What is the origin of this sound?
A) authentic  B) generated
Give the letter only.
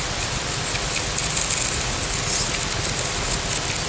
A